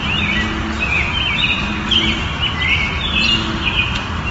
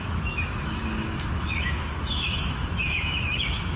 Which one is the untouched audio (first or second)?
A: first